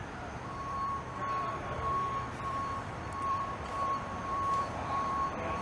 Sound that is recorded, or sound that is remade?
remade